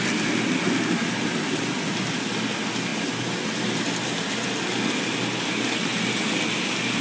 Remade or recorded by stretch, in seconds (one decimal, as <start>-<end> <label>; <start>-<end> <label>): 0.0-7.0 recorded